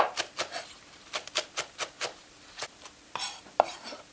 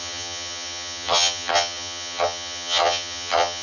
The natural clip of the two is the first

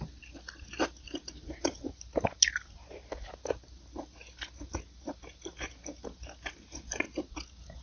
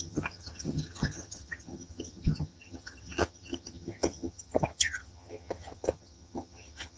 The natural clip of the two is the first